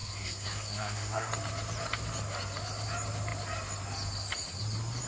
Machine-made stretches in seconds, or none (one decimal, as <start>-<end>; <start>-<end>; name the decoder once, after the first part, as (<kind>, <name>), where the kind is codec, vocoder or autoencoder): 0.0-1.3 (codec, SNAC)